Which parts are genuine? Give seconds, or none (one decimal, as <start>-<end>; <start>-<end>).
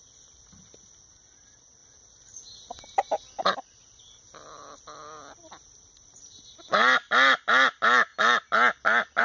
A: 0.0-9.2